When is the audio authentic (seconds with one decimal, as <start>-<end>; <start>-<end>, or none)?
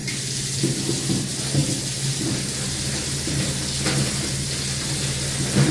0.0-5.7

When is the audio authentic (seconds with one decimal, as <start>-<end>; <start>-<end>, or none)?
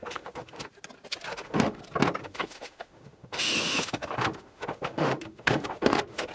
0.7-1.3; 1.8-2.2